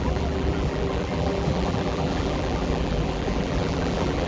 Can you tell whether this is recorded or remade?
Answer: remade